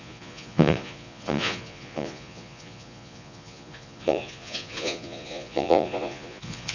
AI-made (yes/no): yes